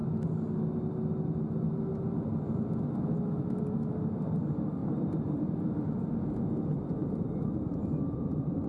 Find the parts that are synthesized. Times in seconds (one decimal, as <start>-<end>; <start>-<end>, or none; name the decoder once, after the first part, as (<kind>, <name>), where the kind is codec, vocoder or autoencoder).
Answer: 4.8-5.9 (vocoder, BigVGAN v2); 7.0-8.7